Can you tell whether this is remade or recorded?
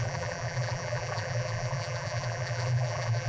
remade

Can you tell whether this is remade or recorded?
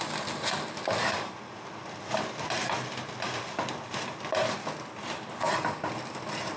recorded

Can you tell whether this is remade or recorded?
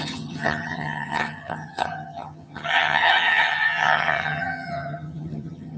remade